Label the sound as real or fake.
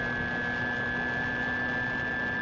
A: real